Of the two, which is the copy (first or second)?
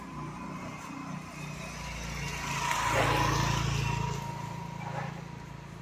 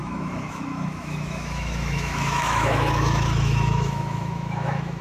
second